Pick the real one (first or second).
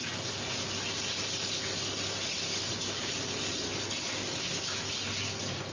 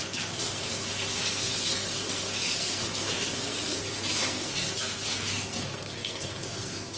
first